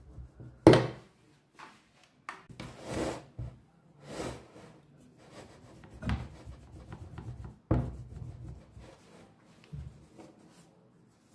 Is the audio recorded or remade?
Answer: recorded